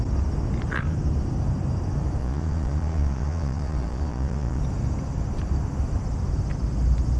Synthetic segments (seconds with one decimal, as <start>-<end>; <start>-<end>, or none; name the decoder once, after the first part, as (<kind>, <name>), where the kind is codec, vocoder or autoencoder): 2.2-4.6 (vocoder, Vocos)